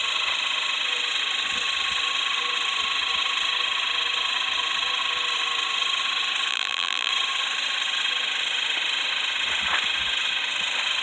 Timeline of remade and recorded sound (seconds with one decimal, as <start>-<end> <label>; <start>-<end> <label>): 0.0-6.5 recorded; 6.5-7.1 remade; 7.1-11.0 recorded